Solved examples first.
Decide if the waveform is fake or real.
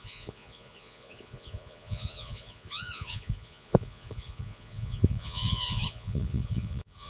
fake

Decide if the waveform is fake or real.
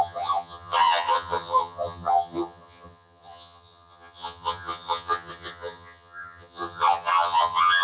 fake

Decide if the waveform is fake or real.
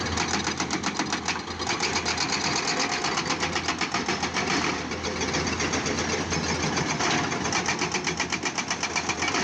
real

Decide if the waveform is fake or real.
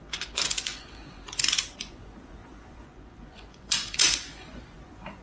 fake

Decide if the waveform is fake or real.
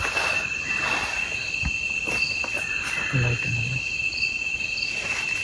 real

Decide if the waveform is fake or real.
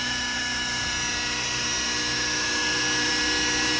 real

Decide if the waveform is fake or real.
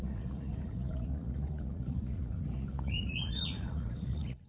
fake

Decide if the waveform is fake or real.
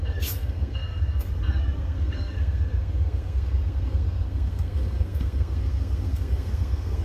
fake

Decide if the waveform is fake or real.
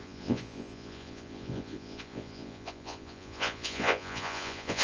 fake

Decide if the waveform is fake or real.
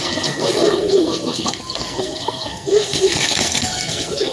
fake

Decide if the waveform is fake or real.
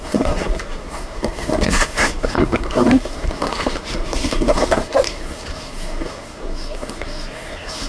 fake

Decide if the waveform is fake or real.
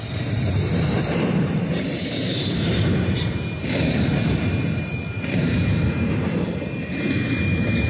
fake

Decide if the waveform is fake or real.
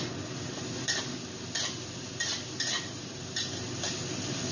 real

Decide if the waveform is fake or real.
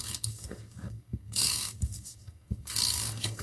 fake